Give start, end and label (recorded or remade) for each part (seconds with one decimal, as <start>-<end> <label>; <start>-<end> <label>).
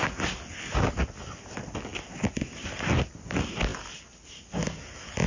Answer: 0.0-5.3 recorded